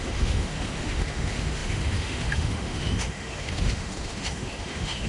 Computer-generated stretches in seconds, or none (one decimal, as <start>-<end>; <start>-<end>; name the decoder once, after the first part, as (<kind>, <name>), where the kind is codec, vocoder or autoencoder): 0.0-5.1 (autoencoder, DAC-VAE)